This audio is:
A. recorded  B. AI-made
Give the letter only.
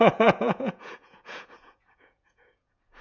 B